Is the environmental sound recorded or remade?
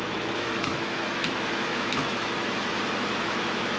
remade